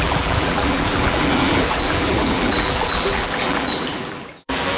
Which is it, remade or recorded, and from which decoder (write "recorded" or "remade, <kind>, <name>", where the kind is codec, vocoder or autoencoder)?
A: remade, vocoder, BigVGAN v2